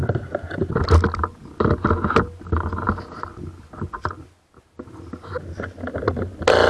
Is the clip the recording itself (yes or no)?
yes